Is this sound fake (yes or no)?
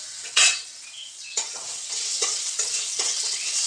yes